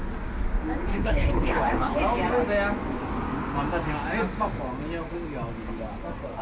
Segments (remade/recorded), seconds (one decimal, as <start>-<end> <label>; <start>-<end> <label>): 0.0-0.9 recorded; 0.9-2.0 remade; 2.0-6.4 recorded